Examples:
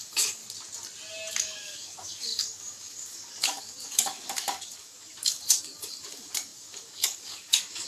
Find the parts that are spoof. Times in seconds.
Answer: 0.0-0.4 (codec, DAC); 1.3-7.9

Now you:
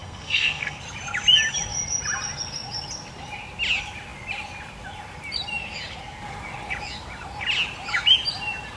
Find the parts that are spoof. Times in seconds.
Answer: 0.0-0.8 (codec, SNAC)

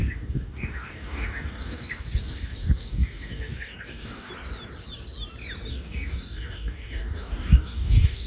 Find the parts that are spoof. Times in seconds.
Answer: 0.0-4.3 (codec, DAC); 5.7-8.3

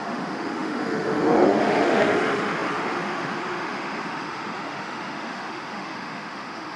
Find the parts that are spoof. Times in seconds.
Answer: 0.0-6.8 (autoencoder, DAC-VAE)

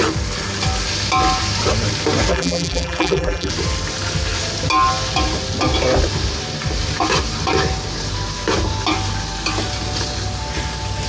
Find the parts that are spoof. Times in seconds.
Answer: 2.3-3.5 (vocoder, BigVGAN v2)

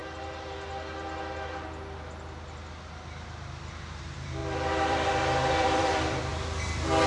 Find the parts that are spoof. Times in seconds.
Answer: 4.0-6.3 (vocoder, BigVGAN v2)

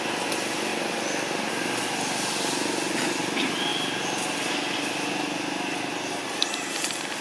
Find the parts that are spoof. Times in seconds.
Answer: 0.7-1.5 (vocoder, BigVGAN v2)